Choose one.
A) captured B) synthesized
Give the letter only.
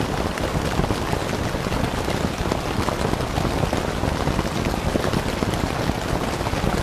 A